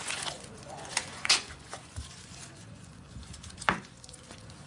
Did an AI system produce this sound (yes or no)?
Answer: yes